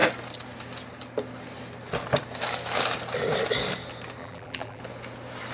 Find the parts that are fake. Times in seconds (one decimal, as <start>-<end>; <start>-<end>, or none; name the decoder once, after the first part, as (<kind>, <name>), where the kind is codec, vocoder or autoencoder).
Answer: 4.2-4.8 (vocoder, BigVGAN v2)